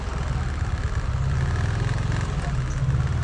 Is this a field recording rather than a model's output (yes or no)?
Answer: yes